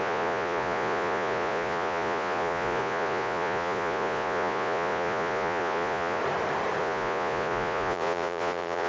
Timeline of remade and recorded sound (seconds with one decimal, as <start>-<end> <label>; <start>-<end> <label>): 0.0-6.2 remade; 6.2-6.8 recorded; 6.8-8.9 remade